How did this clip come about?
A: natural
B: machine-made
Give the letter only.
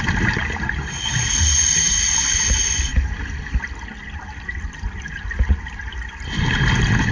A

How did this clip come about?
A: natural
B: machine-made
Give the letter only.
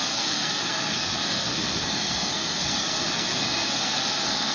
B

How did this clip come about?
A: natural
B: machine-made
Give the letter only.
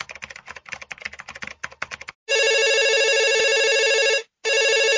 A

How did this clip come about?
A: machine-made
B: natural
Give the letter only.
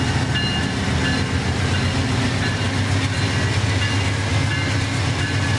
B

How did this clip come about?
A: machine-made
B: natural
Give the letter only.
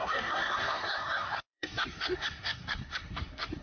A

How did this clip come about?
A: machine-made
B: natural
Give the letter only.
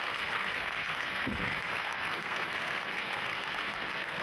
A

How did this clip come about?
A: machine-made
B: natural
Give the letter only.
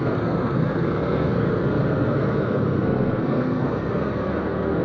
A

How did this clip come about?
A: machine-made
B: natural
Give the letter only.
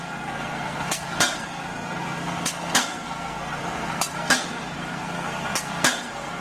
A